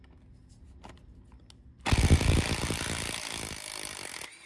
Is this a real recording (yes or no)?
yes